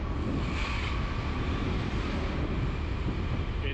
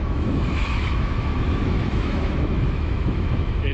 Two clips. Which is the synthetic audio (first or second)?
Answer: second